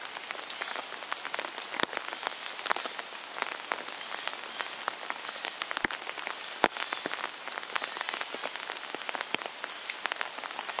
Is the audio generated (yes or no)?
no